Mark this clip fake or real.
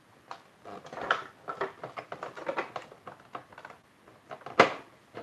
real